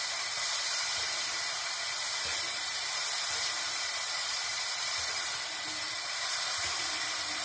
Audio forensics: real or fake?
fake